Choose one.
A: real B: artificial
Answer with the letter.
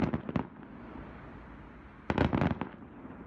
A